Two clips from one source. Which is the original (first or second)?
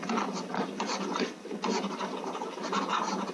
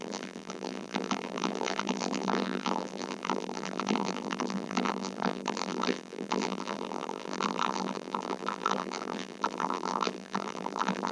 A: first